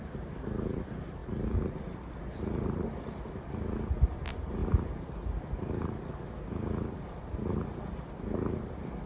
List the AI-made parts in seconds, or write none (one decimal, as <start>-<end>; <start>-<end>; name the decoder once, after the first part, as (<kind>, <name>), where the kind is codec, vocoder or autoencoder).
none

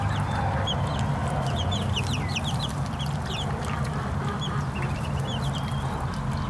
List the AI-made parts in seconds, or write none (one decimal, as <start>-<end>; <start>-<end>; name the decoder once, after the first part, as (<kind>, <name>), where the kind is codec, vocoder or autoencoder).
1.2-5.1 (vocoder, BigVGAN v2)

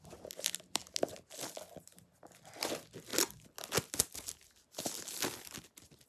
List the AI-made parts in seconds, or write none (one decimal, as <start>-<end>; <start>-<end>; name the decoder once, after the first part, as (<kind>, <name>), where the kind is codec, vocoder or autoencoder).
none